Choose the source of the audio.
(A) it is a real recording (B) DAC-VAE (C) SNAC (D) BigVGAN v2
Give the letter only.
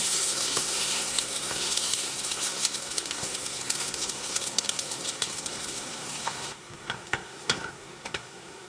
C